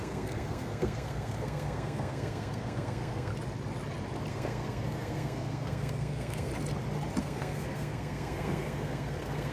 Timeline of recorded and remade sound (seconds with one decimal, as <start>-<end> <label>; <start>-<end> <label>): 0.0-3.3 remade; 3.3-4.3 recorded; 4.3-6.5 remade; 6.5-7.2 recorded; 7.2-9.5 remade